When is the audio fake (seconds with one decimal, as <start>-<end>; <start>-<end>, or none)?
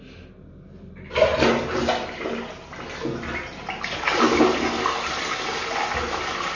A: none